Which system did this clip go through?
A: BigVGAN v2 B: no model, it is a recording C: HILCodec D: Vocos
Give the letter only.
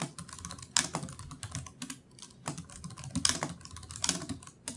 B